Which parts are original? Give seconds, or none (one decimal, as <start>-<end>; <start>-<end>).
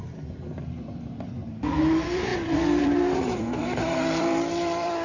2.3-2.8